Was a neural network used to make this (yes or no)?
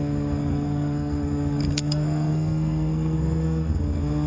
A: yes